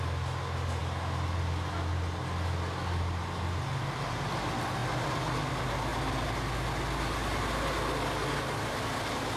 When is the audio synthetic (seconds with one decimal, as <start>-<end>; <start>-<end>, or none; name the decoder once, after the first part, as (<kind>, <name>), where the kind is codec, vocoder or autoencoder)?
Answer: none